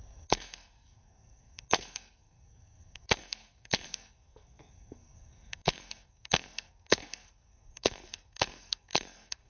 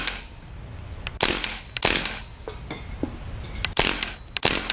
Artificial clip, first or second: first